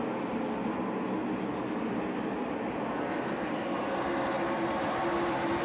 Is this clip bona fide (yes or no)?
yes